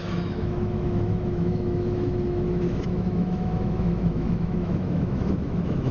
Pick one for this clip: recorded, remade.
remade